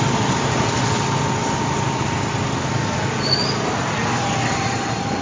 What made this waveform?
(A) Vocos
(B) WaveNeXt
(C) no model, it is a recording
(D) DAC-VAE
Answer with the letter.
C